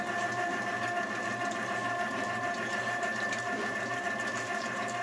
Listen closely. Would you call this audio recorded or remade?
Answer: remade